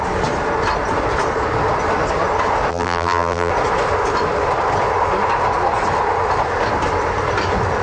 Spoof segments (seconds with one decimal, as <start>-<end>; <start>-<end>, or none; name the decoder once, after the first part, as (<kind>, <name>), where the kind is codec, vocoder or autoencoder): 2.7-3.5 (vocoder, BigVGAN v2)